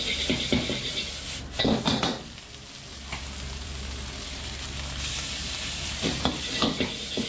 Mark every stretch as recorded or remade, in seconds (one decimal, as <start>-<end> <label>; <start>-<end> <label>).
0.0-2.9 recorded; 2.9-6.5 remade; 6.5-7.3 recorded